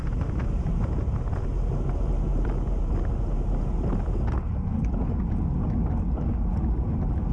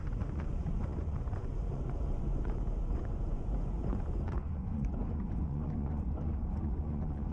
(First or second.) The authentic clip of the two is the first